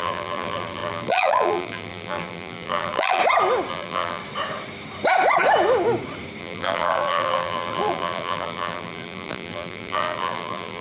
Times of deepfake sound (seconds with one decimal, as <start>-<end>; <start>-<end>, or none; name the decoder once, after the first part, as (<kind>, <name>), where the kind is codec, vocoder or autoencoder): 0.0-3.2 (vocoder, BigVGAN v2); 3.7-4.2; 6.4-10.8